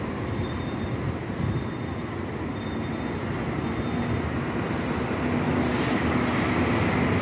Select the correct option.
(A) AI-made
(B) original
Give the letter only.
B